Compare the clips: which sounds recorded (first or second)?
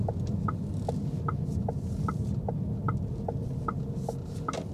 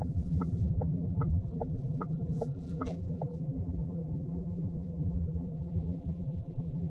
first